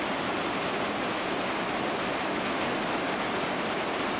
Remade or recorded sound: recorded